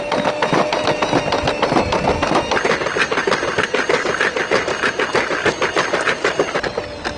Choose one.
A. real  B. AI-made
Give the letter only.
A